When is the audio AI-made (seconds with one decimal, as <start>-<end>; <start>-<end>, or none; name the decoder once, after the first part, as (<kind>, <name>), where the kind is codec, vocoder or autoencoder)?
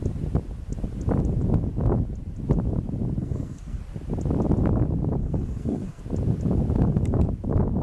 3.2-3.8 (codec, SNAC); 5.2-6.0